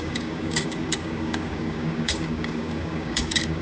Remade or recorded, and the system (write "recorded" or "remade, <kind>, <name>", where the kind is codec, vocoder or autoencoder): remade, codec, DAC